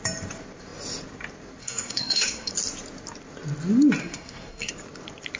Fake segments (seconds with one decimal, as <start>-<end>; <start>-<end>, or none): 1.6-2.5; 4.0-4.7